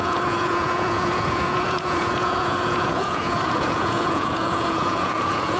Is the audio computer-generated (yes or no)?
yes